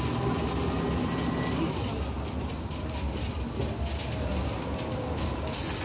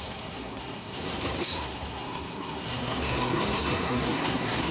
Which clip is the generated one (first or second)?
second